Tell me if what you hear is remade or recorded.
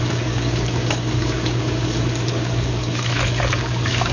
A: remade